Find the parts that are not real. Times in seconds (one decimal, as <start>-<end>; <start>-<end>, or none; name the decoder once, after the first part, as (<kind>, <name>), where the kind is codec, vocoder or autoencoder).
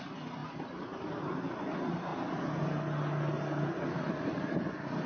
0.0-2.1 (vocoder, BigVGAN v2); 4.3-5.1